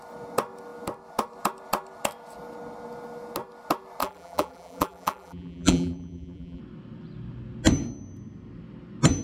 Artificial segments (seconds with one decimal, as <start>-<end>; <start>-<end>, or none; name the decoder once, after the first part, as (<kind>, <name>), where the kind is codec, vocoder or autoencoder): 4.0-6.6 (vocoder, BigVGAN v2)